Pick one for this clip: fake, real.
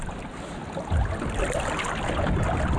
real